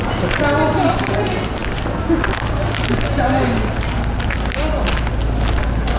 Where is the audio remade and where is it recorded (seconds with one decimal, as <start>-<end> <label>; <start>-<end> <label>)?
0.0-6.0 recorded